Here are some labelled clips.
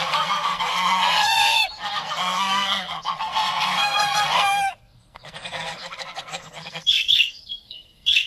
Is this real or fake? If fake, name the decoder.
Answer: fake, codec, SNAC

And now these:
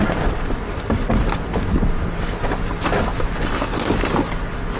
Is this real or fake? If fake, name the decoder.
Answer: real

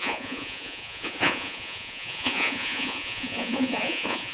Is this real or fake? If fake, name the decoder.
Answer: fake, vocoder, Vocos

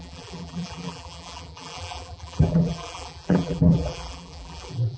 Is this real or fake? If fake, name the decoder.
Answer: fake, vocoder, BigVGAN v2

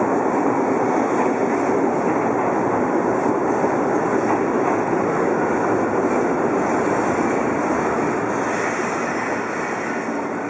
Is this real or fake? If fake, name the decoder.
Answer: real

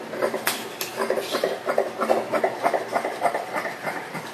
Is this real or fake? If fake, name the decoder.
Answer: real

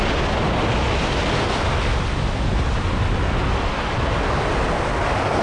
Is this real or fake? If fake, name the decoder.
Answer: real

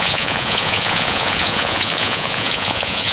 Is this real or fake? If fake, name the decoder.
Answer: fake, vocoder, Vocos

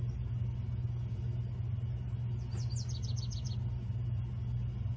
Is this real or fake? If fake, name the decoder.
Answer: real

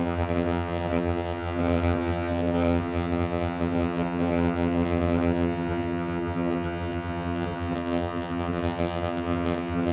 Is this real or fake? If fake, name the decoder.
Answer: fake, vocoder, HiFi-GAN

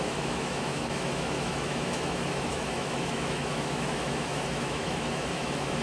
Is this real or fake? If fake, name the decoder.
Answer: fake, autoencoder, DAC-VAE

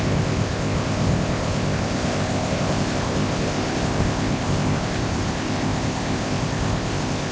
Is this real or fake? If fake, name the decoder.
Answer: fake, codec, ZipCodec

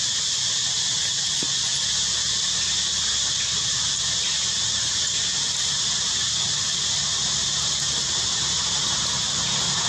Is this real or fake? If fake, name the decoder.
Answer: real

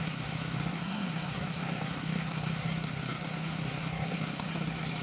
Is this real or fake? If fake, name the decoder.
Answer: fake, codec, SNAC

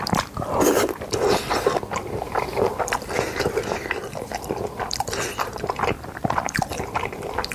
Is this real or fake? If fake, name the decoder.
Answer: fake, vocoder, BigVGAN v2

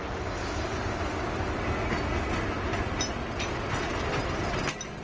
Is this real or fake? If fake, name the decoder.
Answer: real